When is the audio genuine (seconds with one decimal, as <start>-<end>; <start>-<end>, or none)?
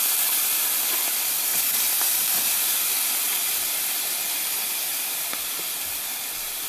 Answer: 0.0-6.7